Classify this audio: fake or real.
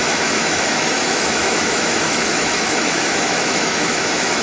fake